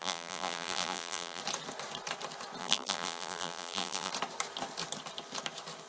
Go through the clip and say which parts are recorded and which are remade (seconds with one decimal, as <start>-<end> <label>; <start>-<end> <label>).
0.0-1.4 remade; 1.4-2.6 recorded; 2.6-4.1 remade; 4.1-5.9 recorded